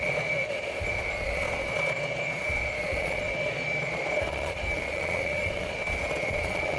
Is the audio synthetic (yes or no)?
yes